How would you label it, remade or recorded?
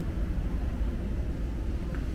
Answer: recorded